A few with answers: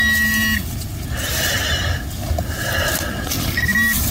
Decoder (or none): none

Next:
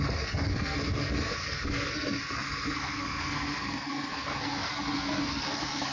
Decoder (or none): codec, SNAC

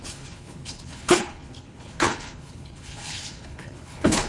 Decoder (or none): codec, HILCodec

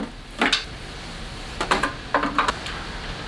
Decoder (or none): none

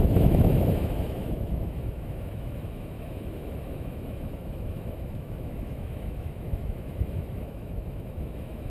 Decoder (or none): autoencoder, DAC-VAE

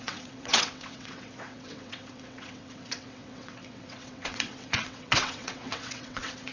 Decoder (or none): vocoder, WaveNeXt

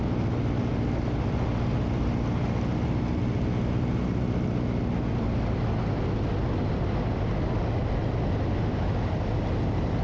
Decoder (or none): none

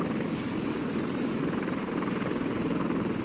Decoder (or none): none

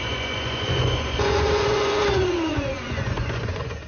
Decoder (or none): vocoder, Vocos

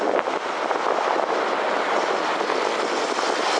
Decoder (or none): none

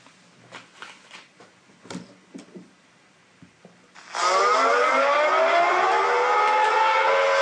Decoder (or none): none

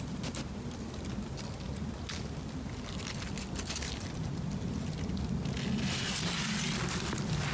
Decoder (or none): none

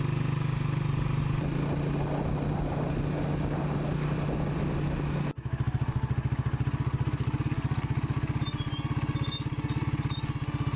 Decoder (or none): none